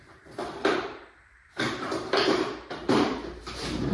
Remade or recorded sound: remade